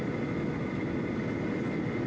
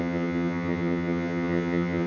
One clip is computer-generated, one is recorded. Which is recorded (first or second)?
first